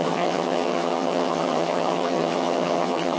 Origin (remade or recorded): remade